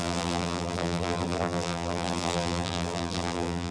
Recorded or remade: remade